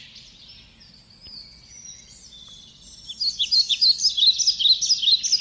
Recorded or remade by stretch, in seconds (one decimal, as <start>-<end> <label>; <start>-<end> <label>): 0.0-5.4 recorded